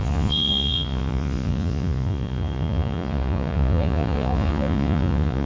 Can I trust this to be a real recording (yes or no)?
no